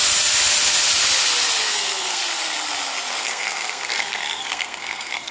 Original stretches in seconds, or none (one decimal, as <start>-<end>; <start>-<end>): 0.0-1.6; 2.2-3.1